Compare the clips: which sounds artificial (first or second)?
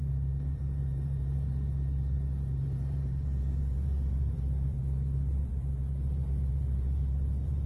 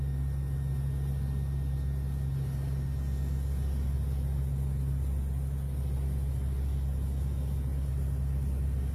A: first